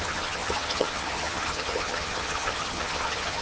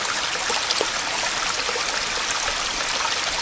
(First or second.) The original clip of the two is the second